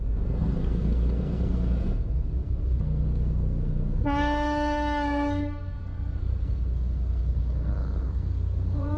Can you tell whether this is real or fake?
fake